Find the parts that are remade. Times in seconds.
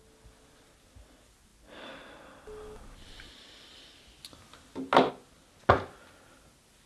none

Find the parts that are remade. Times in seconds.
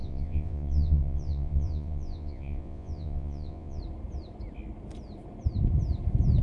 0.0-3.8 (vocoder, Vocos)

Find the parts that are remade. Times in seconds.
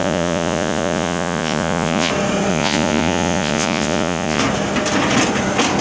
0.0-2.1 (vocoder, Vocos); 2.5-4.4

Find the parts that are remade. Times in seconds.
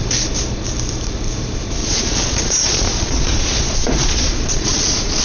1.8-5.2 (vocoder, Vocos)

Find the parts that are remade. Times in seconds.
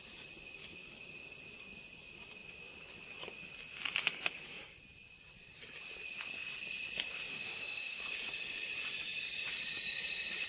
7.3-8.0 (autoencoder, DAC-VAE)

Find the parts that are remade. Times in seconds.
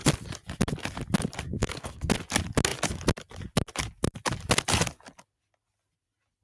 1.5-2.1 (codec, SNAC)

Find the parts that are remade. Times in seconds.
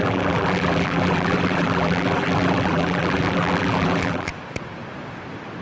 0.0-4.3 (vocoder, BigVGAN v2)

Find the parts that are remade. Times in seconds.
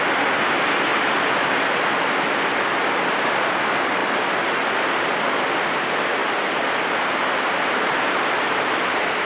none